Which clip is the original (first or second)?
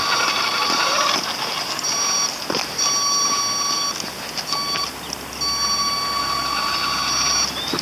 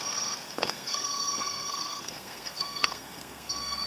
first